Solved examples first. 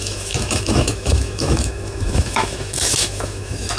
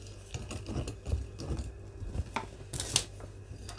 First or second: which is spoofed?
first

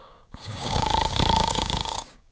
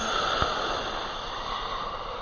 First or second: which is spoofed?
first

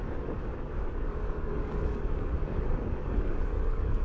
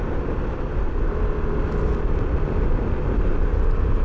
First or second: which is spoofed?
first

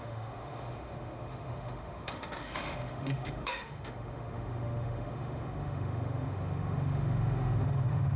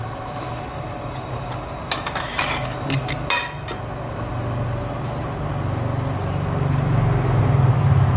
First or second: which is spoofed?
first